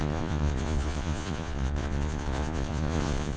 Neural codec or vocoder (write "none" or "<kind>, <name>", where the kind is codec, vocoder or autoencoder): vocoder, Vocos